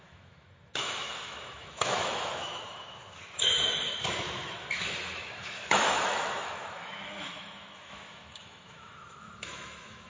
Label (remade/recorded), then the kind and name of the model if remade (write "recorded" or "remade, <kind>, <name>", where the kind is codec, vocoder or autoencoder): remade, autoencoder, DAC-VAE